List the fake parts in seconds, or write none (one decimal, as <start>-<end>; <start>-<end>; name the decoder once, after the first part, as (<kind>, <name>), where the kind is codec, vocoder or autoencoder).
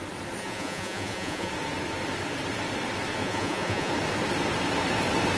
0.4-1.5 (vocoder, Vocos); 3.2-3.9